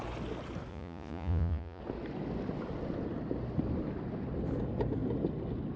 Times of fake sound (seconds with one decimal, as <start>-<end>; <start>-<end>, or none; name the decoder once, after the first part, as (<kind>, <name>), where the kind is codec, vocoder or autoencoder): 0.7-1.8 (vocoder, Vocos)